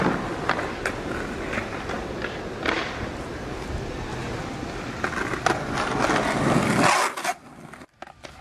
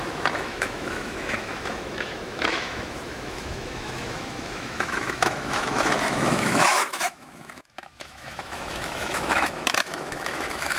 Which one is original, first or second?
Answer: first